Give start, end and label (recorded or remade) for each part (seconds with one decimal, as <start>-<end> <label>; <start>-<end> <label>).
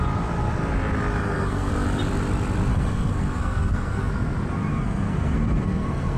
0.0-1.2 recorded; 1.2-1.7 remade; 1.7-2.7 recorded; 2.7-4.1 remade; 4.1-4.7 recorded; 4.7-6.2 remade